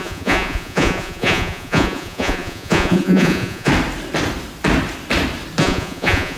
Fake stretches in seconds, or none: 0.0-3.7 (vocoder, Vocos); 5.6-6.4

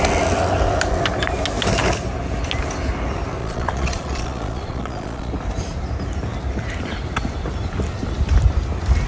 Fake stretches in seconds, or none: 3.4-5.3 (vocoder, Vocos)

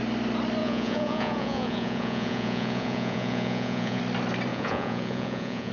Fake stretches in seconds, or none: 0.6-4.0 (vocoder, Vocos); 4.5-5.7